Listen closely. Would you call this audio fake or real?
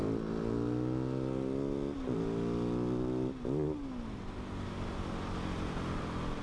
real